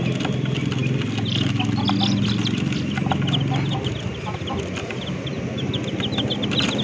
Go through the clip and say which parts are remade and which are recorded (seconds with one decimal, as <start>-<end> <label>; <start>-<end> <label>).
0.0-6.8 recorded